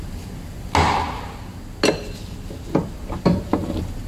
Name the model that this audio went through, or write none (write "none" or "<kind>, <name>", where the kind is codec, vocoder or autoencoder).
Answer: none